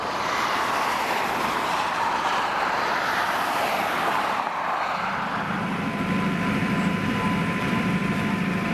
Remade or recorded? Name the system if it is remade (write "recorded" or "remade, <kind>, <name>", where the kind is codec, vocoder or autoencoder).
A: remade, vocoder, BigVGAN v2